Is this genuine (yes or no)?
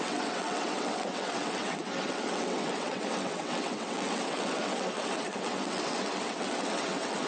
no